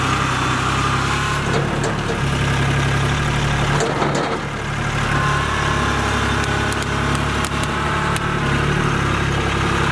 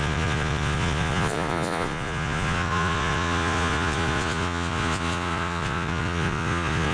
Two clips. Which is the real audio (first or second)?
first